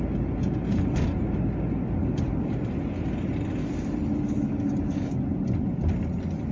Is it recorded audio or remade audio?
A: recorded